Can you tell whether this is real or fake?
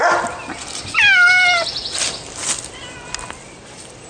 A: real